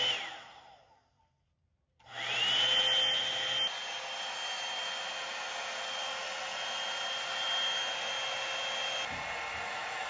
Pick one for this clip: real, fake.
real